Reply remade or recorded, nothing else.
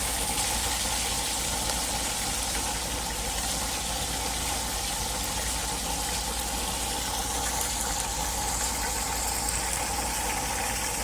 recorded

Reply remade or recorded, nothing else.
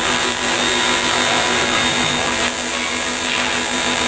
remade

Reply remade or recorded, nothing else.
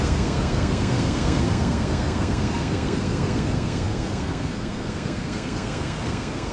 remade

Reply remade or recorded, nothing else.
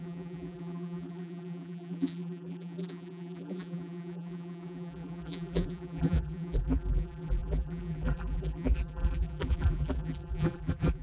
remade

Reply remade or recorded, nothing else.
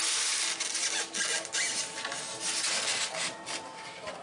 recorded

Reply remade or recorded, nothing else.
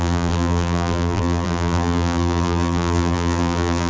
remade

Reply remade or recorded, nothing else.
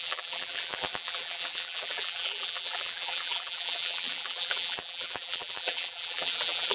remade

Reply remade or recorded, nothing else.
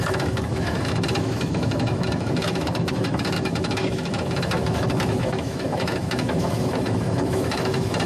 remade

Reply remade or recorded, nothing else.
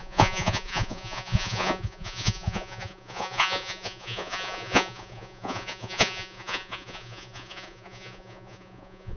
remade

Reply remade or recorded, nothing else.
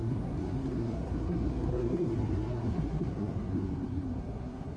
remade